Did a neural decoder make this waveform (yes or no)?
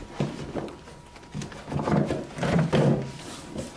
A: no